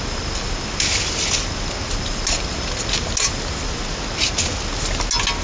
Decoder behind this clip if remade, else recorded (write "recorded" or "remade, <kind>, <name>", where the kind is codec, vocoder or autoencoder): recorded